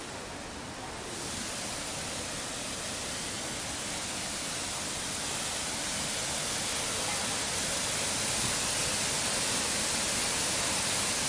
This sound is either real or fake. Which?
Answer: real